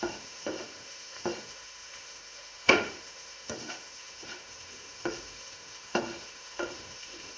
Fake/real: fake